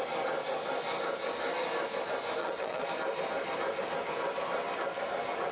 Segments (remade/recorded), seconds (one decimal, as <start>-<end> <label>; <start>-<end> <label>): 0.0-2.4 recorded; 2.4-2.9 remade; 2.9-5.5 recorded